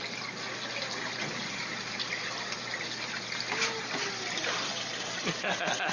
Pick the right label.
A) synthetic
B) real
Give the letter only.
B